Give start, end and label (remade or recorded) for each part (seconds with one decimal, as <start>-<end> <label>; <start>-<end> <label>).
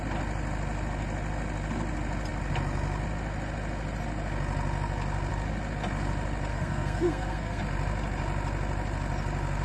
0.0-6.5 recorded; 6.5-7.6 remade; 7.6-9.6 recorded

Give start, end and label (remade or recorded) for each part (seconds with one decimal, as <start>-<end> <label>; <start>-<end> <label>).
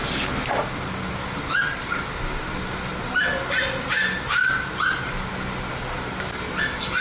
0.0-7.0 recorded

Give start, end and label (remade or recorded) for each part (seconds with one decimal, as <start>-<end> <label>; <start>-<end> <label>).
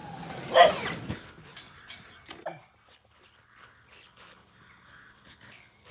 0.0-1.1 recorded; 1.1-1.5 remade; 1.5-2.9 recorded; 2.9-5.9 remade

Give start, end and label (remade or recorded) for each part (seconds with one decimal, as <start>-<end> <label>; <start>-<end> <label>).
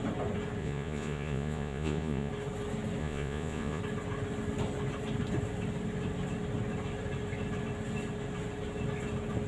0.0-0.6 recorded; 0.6-2.3 remade; 2.3-3.0 recorded; 3.0-3.8 remade; 3.8-9.5 recorded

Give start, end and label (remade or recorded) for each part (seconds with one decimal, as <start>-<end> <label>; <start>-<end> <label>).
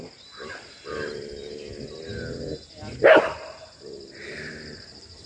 0.0-5.3 recorded